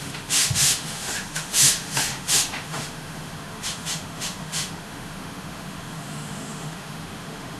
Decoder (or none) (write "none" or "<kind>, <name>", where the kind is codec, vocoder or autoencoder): autoencoder, DAC-VAE